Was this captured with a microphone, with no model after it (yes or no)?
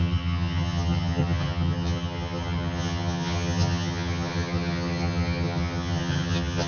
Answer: no